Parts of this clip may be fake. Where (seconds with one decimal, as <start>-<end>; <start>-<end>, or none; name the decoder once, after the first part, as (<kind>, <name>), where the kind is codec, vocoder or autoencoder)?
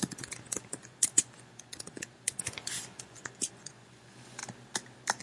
0.0-4.4 (vocoder, Vocos)